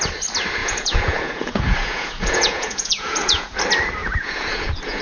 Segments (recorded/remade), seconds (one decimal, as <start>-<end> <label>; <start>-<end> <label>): 0.0-0.6 recorded; 0.6-3.6 remade; 3.6-4.0 recorded; 4.0-5.0 remade